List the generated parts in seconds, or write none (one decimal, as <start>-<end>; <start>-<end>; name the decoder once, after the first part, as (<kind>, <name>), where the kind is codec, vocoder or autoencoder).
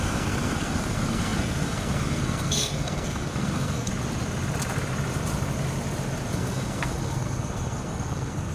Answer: 0.0-3.9 (codec, SNAC); 6.3-8.5